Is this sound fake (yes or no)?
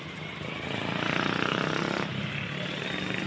no